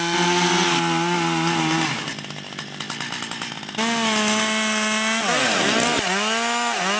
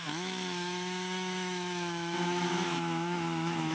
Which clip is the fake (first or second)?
second